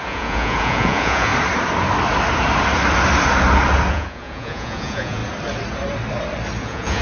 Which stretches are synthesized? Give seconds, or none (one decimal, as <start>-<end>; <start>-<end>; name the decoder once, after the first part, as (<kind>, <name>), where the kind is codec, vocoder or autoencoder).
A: 0.0-1.3 (vocoder, Vocos); 3.9-5.2; 6.6-7.0